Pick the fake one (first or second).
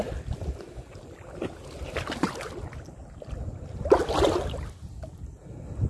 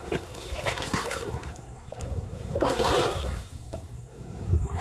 second